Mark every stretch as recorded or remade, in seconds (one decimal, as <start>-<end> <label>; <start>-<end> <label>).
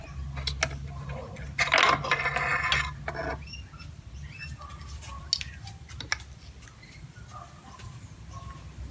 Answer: 0.0-8.9 recorded